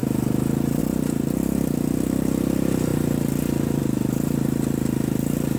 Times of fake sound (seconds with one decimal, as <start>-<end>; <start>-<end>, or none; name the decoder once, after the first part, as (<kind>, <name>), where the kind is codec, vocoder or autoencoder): none